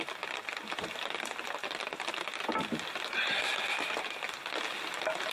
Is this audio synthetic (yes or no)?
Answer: no